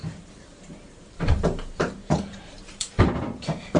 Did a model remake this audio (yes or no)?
yes